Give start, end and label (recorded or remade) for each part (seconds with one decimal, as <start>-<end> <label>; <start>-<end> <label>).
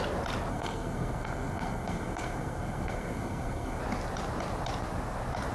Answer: 0.0-0.5 recorded; 0.5-3.8 remade; 3.8-5.5 recorded